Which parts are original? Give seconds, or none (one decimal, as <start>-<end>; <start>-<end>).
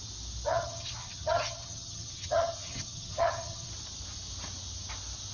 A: 0.0-0.5; 3.7-5.3